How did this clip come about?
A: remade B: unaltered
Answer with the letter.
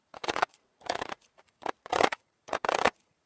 A